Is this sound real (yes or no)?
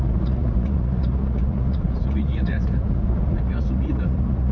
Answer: no